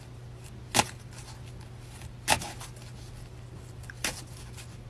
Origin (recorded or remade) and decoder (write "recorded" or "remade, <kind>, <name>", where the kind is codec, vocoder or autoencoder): recorded